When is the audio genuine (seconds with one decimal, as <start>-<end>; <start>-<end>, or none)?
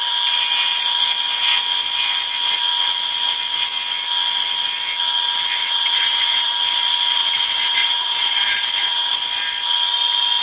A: 0.0-5.6; 6.5-7.2; 9.1-10.4